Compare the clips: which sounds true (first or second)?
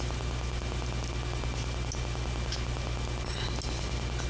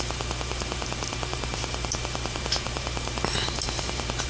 first